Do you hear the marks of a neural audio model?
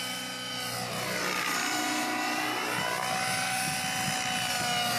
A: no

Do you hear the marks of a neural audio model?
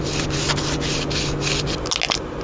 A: no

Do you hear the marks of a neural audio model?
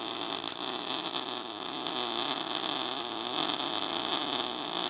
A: no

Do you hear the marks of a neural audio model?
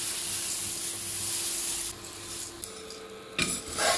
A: no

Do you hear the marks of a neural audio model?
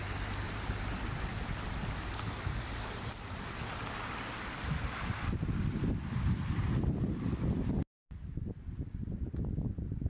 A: no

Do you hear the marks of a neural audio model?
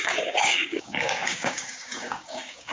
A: yes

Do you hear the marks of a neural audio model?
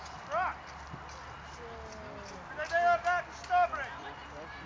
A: no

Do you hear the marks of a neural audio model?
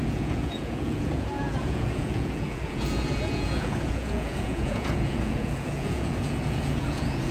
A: yes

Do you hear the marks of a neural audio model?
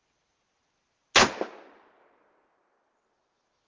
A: no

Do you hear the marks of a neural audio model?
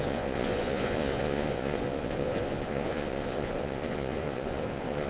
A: yes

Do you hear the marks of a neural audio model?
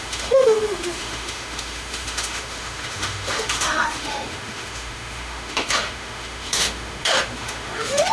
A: yes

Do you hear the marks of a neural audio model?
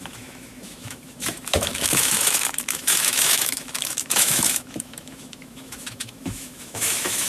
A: yes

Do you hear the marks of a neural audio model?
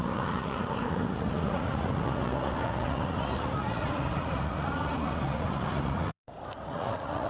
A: yes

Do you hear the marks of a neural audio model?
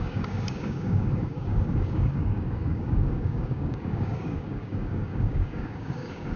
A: yes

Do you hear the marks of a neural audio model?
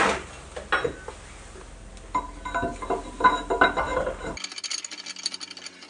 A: no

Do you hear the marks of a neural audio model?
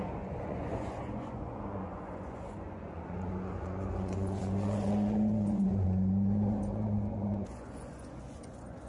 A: yes